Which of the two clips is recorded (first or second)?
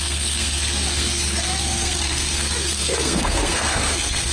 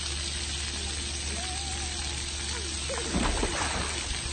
second